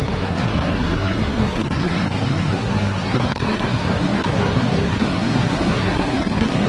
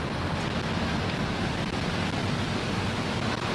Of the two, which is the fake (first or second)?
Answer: first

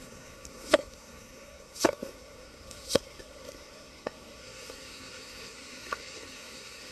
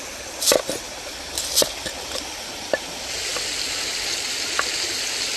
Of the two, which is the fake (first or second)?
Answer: first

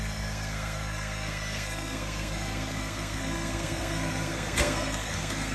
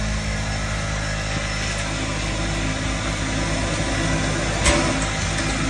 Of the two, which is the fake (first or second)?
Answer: first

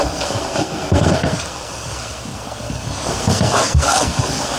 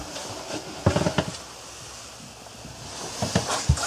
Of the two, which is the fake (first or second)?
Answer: first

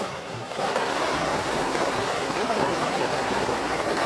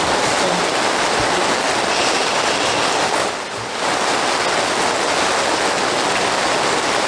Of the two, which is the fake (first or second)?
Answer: first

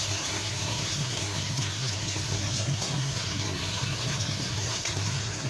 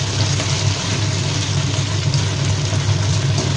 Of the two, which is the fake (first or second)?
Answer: first